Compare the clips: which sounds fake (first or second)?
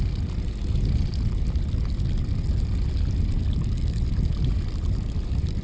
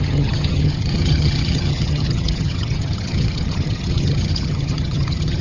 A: second